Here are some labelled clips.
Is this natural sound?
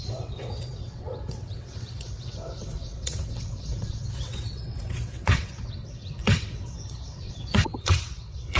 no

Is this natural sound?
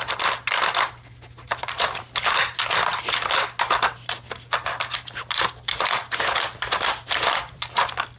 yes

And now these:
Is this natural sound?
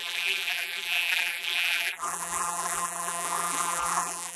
no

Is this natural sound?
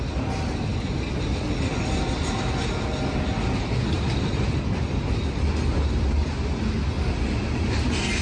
yes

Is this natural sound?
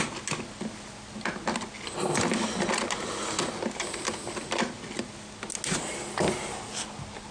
yes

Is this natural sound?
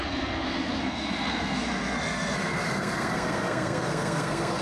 no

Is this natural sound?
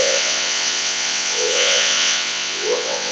no